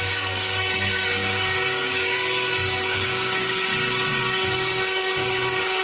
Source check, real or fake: fake